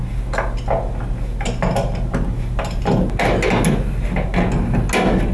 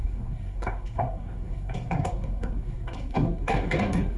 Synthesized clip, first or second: second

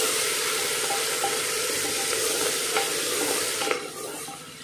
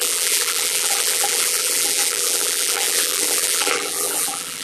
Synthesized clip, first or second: second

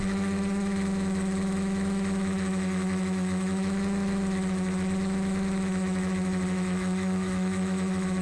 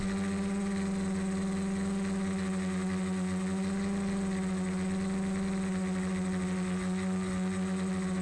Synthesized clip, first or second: first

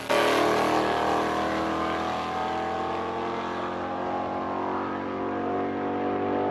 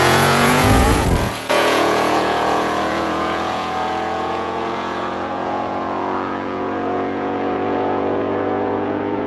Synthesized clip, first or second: second